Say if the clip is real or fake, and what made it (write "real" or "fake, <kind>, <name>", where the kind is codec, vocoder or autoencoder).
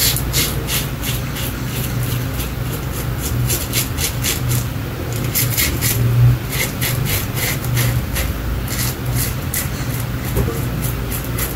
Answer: real